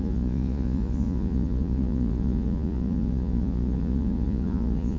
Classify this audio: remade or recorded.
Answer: remade